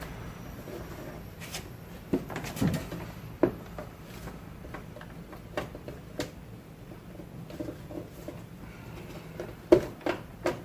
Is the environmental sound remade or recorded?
recorded